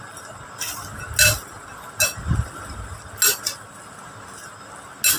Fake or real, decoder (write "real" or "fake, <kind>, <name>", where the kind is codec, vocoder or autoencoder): real